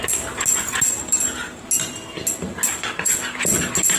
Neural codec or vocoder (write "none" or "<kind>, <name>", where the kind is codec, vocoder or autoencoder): none